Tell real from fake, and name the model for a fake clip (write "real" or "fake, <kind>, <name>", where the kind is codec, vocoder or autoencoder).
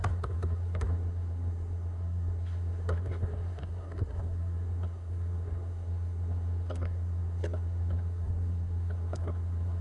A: fake, codec, SNAC